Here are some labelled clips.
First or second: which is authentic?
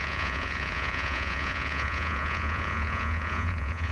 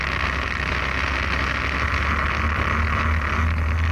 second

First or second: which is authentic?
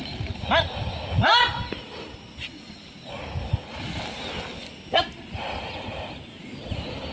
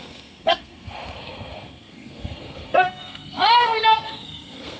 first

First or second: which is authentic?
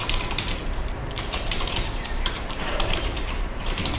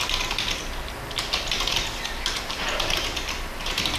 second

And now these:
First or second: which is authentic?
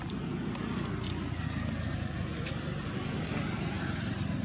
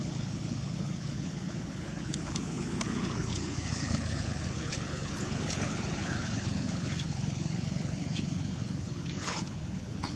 first